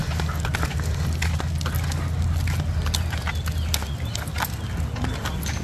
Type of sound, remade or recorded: recorded